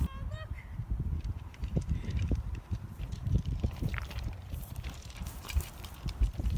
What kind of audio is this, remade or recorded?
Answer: remade